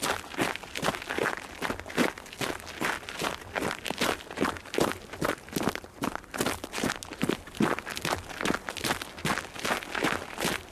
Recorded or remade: recorded